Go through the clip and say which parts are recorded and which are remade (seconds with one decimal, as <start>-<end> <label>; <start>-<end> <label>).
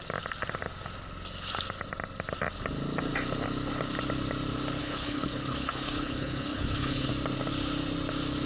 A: 0.0-4.8 recorded; 4.8-7.1 remade; 7.1-8.5 recorded